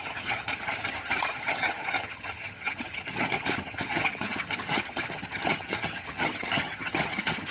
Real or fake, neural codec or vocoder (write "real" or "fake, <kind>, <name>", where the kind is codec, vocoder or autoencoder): fake, vocoder, HiFi-GAN